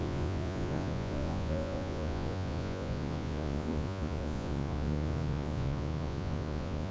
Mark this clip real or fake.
fake